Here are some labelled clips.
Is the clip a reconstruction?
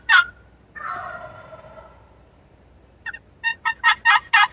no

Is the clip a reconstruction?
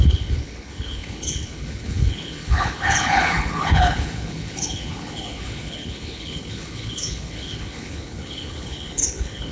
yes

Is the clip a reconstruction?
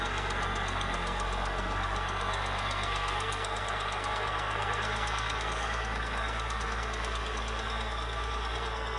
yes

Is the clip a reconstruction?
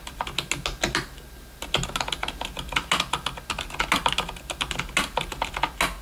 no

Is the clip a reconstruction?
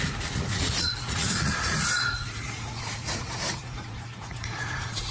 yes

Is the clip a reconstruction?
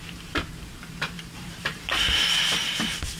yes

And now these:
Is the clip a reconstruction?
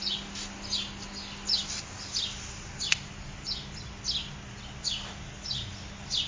no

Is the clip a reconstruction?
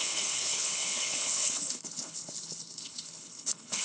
yes